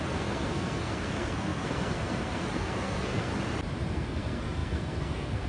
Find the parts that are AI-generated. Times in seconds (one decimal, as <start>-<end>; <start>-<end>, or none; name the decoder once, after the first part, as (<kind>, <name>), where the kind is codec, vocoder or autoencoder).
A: 0.0-3.3 (codec, SNAC); 3.9-5.5

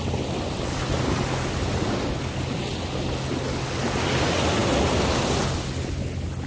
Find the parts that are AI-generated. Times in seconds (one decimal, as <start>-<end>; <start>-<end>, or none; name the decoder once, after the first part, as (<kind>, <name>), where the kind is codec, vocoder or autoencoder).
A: none

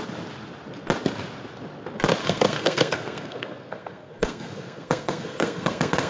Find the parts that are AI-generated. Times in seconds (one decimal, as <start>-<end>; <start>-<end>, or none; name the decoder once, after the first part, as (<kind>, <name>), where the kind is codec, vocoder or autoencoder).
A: 2.2-6.1 (codec, SNAC)

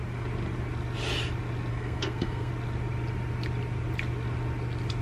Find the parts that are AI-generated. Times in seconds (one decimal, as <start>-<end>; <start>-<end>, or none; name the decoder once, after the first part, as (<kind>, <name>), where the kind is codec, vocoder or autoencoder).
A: 1.7-2.5 (codec, SNAC)

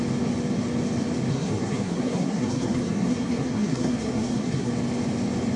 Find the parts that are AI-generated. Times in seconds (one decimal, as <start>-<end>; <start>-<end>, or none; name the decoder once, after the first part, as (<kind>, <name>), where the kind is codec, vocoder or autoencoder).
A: 1.3-4.7 (codec, SNAC)

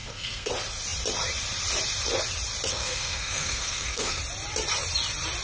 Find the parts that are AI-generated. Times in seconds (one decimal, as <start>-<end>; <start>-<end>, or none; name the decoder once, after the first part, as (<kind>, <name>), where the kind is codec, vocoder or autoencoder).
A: 0.0-0.5 (codec, SNAC); 2.7-4.2

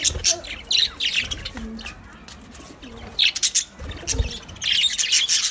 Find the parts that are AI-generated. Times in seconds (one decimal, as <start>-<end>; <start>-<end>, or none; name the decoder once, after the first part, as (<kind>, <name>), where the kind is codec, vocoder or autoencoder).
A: none

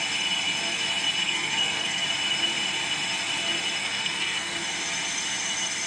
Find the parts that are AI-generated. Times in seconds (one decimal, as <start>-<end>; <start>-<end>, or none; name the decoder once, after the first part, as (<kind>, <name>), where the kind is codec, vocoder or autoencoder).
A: 1.2-2.0 (codec, SNAC); 3.8-4.5